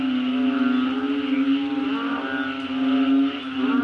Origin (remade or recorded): recorded